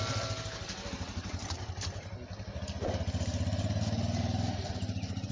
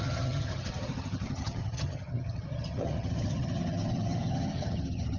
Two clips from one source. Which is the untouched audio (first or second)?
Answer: first